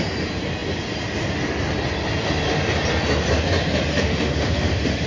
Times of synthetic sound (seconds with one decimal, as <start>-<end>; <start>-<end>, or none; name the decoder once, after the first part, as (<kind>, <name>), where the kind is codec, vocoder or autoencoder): 3.9-5.1 (autoencoder, DAC-VAE)